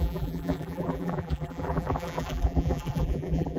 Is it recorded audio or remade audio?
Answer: remade